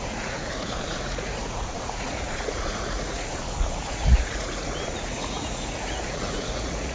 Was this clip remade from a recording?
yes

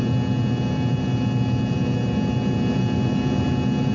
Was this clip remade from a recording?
no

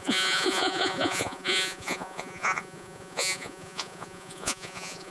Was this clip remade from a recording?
yes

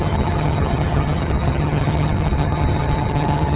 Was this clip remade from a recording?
yes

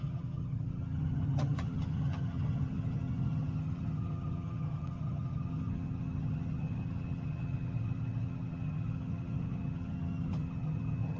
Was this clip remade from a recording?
yes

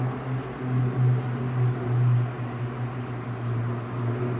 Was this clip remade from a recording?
no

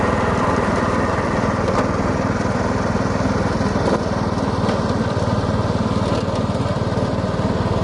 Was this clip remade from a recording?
yes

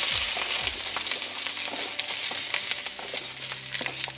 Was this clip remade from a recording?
no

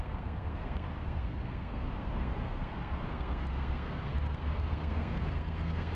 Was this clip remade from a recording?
yes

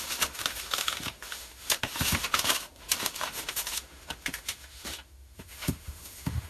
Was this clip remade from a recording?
yes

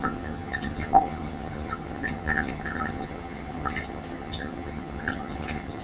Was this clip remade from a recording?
yes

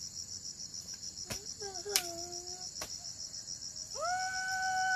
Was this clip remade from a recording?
no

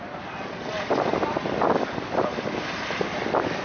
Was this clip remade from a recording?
no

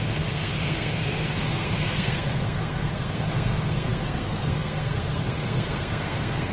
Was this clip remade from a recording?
yes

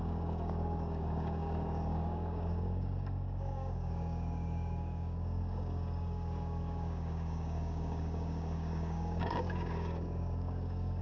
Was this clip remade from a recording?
yes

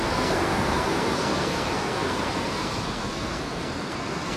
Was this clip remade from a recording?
yes